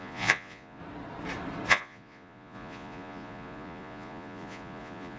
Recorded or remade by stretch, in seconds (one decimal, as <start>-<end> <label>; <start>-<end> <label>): 0.0-0.8 remade; 0.8-1.7 recorded; 1.7-5.2 remade